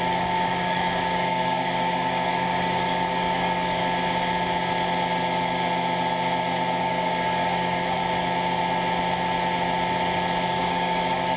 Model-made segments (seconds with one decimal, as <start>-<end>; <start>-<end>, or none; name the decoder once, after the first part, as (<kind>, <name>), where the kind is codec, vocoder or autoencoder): 0.0-3.8 (codec, DAC); 6.8-8.0; 10.5-11.4